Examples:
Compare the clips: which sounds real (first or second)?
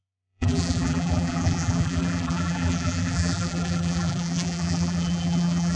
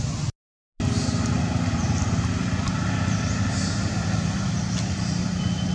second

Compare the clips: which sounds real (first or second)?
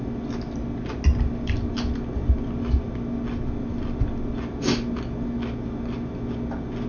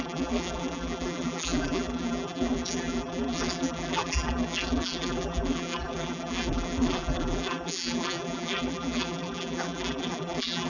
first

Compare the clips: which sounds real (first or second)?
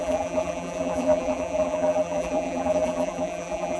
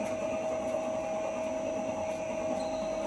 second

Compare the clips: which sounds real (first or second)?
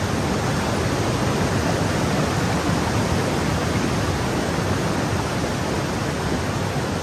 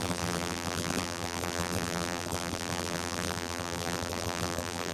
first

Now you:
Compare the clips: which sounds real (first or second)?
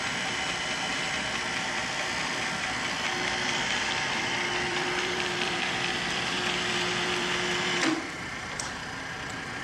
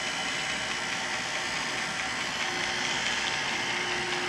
second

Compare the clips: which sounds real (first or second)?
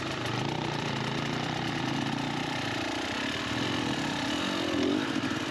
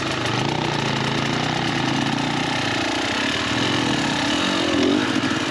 second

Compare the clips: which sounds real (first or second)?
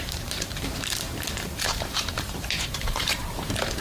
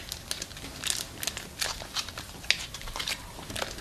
second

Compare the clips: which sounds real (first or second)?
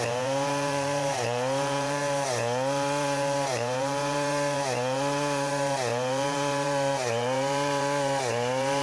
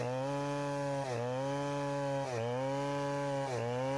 second